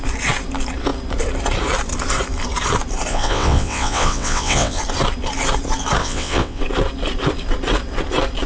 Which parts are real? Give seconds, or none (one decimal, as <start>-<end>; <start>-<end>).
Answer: 0.0-3.1; 4.8-6.0; 6.6-8.5